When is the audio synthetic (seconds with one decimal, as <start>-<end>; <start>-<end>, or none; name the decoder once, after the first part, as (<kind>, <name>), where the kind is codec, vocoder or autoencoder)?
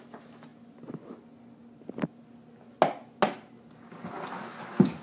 none